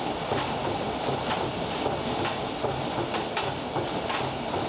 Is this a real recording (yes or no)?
yes